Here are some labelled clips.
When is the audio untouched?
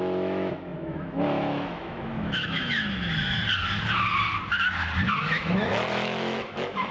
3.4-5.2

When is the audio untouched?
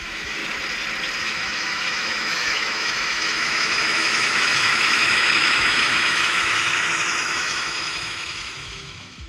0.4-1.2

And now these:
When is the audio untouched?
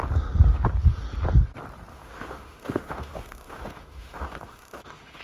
0.0-1.9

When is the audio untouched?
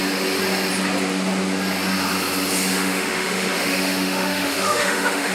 0.0-2.7